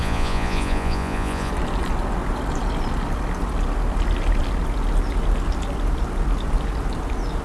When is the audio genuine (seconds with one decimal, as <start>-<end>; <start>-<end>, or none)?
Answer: 1.5-7.4